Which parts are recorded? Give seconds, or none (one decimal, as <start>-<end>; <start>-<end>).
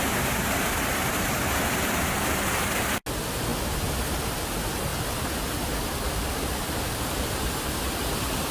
0.0-8.5